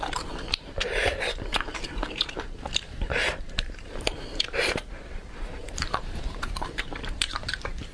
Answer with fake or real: fake